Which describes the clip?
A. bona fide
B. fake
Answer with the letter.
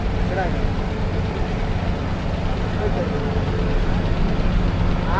A